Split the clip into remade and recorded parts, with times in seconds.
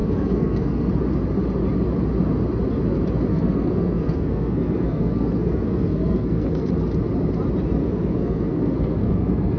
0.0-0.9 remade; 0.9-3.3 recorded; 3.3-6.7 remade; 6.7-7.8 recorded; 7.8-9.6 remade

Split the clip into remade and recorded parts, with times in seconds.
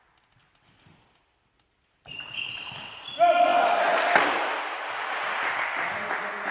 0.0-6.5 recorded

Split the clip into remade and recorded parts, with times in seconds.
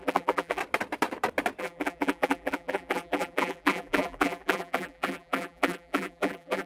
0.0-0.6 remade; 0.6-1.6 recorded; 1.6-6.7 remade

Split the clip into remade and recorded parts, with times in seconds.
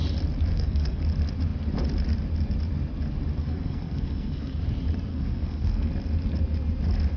0.0-0.5 recorded; 0.5-1.0 remade; 1.0-3.4 recorded; 3.4-4.6 remade; 4.6-5.1 recorded; 5.1-5.9 remade; 5.9-7.2 recorded